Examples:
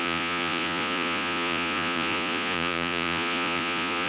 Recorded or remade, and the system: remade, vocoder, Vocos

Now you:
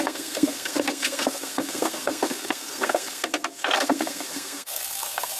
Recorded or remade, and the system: remade, codec, SNAC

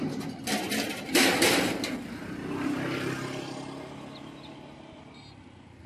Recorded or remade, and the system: recorded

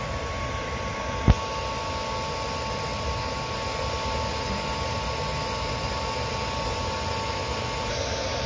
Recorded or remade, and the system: recorded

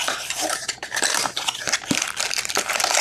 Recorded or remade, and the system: remade, vocoder, BigVGAN v2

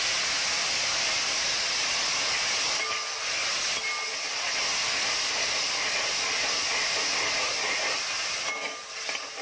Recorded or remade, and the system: recorded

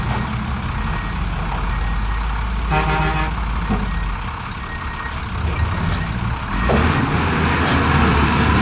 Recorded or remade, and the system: recorded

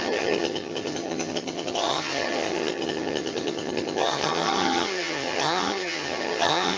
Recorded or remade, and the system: remade, vocoder, HiFi-GAN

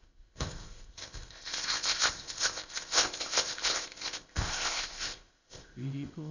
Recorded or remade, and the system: remade, codec, ZipCodec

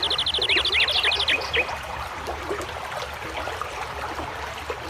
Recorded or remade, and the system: recorded